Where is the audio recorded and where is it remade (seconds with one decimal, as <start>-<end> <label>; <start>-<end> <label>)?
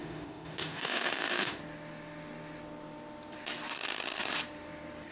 0.0-1.6 remade; 1.6-5.1 recorded